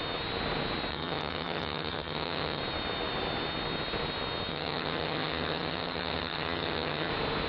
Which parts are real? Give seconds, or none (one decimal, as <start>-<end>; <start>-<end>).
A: 0.0-0.9; 2.6-4.5; 7.1-7.5